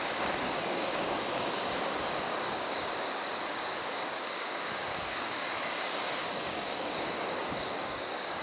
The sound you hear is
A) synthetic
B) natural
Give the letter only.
A